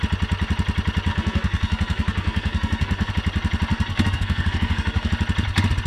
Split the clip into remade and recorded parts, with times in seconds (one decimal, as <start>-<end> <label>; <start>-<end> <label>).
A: 0.0-1.1 recorded; 1.1-3.1 remade; 3.1-3.7 recorded; 3.7-5.1 remade; 5.1-5.9 recorded